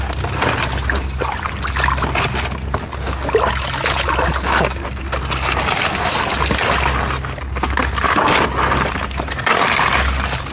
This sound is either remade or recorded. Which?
recorded